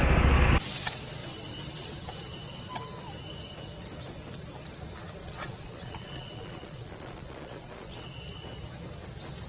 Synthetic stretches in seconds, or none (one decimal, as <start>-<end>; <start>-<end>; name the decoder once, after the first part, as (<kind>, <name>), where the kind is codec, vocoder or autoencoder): 5.2-8.0 (vocoder, Vocos)